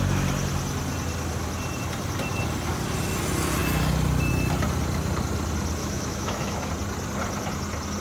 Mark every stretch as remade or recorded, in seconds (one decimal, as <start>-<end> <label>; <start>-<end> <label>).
0.0-5.8 recorded; 5.8-6.7 remade; 6.7-8.0 recorded